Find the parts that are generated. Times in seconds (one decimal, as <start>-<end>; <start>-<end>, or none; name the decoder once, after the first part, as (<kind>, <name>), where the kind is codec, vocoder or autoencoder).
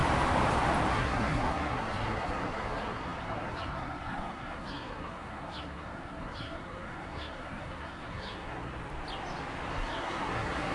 0.9-8.7 (codec, SNAC); 9.7-10.7